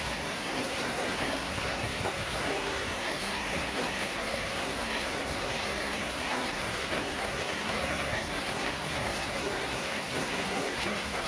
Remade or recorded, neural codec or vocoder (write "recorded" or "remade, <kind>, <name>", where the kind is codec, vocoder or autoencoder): remade, codec, SNAC